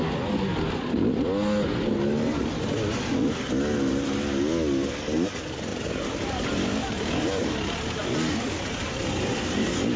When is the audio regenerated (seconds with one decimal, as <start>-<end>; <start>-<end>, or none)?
5.7-8.0; 8.8-9.5